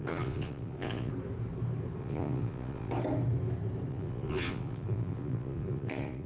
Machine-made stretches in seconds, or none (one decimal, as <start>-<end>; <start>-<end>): 0.0-1.1; 2.0-2.9; 3.9-6.3